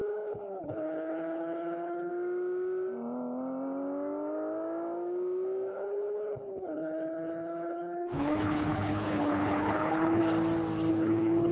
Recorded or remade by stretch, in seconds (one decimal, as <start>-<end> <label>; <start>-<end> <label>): 0.0-2.1 remade; 2.1-5.7 recorded; 5.7-10.2 remade; 10.2-10.9 recorded; 10.9-11.5 remade